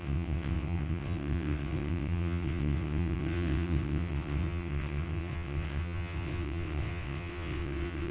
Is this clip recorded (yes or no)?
no